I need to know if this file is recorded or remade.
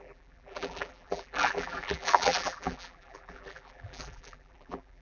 remade